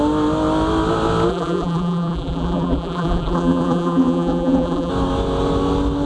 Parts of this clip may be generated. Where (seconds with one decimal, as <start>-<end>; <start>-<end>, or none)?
1.3-4.9